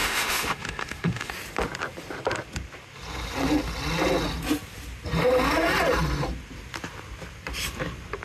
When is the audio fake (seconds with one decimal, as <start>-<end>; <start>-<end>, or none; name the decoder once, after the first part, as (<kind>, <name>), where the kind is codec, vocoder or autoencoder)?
0.0-1.3 (autoencoder, DAC-VAE)